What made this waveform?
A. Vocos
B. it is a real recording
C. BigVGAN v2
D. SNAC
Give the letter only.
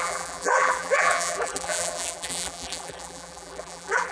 C